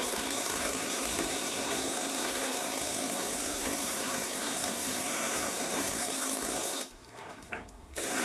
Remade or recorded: remade